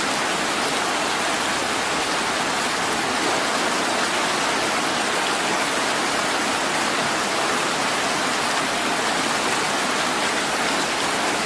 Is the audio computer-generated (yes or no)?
no